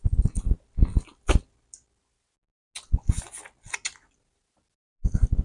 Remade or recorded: recorded